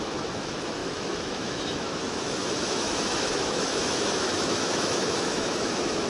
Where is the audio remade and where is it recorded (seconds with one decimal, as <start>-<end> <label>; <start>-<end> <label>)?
0.0-6.1 remade